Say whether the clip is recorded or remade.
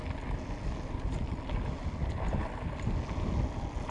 recorded